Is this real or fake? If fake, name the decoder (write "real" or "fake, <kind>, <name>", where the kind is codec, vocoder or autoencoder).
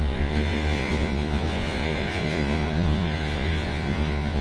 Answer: fake, vocoder, Vocos